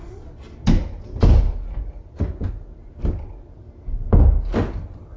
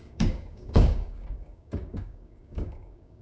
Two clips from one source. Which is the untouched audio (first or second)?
first